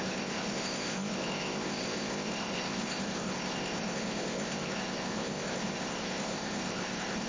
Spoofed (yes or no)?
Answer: yes